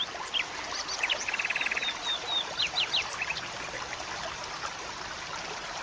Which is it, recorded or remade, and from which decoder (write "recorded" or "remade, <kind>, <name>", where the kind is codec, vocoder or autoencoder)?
recorded